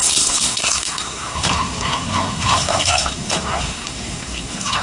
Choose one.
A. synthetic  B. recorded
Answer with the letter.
A